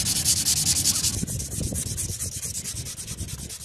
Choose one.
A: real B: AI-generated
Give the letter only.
A